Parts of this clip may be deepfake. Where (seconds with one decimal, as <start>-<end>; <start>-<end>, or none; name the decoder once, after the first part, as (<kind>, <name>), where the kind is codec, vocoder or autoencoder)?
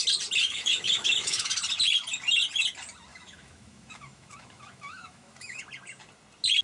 0.4-1.5 (autoencoder, DAC-VAE); 3.1-5.6